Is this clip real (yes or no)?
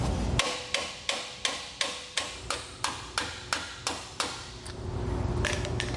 yes